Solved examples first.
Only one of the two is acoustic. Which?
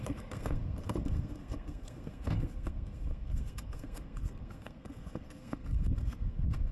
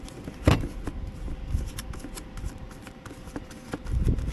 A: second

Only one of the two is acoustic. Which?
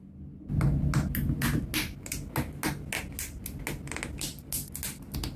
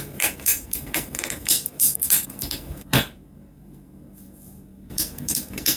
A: first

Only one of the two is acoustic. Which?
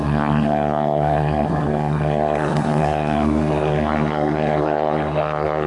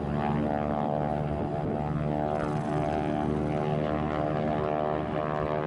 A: second